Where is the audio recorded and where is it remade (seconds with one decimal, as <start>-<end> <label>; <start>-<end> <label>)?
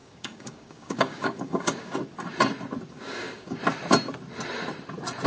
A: 0.0-2.0 remade; 2.0-2.9 recorded; 2.9-3.6 remade; 3.6-5.3 recorded